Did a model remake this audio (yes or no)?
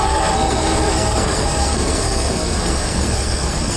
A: yes